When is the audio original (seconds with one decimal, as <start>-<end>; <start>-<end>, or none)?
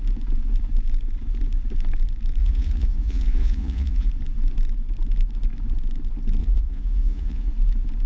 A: 0.0-2.4; 4.1-6.4; 7.5-8.1